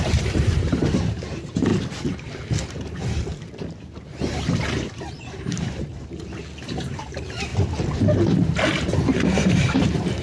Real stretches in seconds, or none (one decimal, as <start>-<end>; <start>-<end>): 1.7-4.7; 5.9-6.9; 7.5-9.1